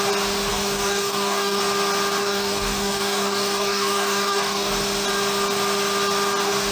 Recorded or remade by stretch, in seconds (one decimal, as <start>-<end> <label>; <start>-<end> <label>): 0.0-0.5 recorded; 0.5-1.6 remade; 1.6-2.2 recorded; 2.2-4.7 remade; 4.7-6.7 recorded